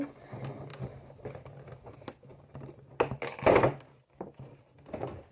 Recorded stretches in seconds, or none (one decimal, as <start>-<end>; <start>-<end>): 0.0-5.3